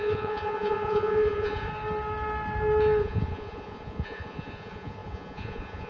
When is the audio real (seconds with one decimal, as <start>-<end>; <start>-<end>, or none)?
1.7-3.0